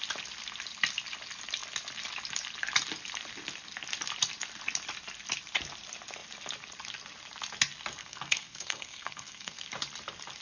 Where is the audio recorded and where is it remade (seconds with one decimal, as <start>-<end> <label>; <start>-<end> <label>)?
0.0-8.0 recorded; 8.0-9.7 remade; 9.7-10.4 recorded